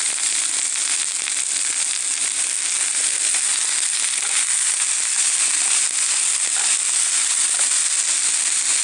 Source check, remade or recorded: recorded